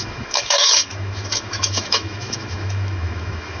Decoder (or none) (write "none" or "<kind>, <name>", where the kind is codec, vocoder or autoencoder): autoencoder, DAC-VAE